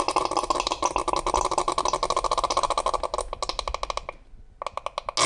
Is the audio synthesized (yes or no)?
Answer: no